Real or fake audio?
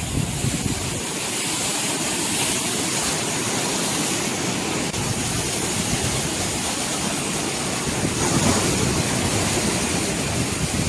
real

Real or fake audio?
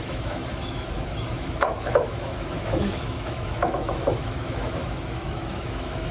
fake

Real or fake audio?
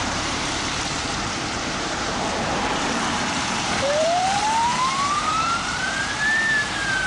fake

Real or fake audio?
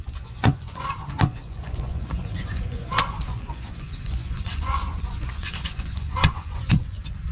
fake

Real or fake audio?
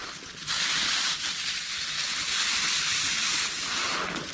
real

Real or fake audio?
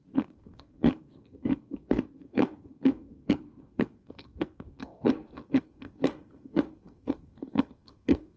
fake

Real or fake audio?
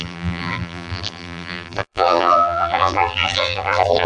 fake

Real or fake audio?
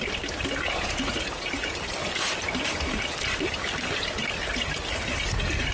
real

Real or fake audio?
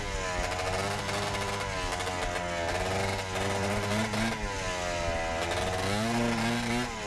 real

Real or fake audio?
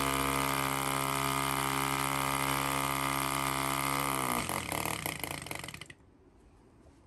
real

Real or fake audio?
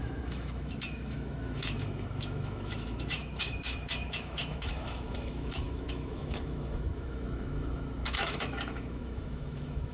fake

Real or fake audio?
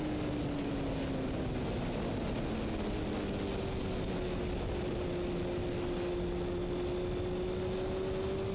real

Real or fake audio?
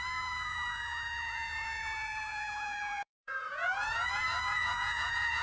fake